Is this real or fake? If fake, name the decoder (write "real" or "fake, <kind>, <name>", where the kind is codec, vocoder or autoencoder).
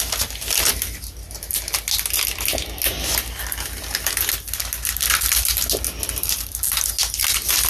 real